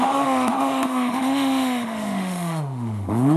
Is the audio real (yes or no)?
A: no